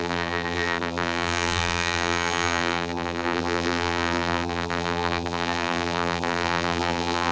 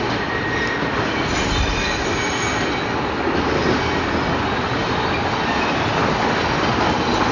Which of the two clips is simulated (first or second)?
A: first